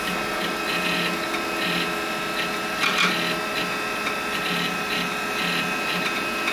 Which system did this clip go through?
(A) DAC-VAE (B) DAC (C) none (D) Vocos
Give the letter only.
C